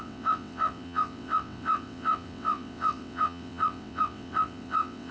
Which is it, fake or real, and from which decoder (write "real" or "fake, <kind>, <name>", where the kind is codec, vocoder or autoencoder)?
fake, vocoder, WaveNeXt